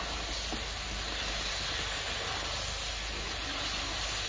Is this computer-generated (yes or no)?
no